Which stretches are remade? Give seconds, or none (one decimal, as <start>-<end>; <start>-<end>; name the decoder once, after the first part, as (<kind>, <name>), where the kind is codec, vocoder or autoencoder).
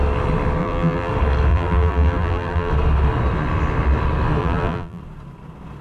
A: 0.6-1.1 (vocoder, BigVGAN v2); 1.5-2.7; 4.4-5.0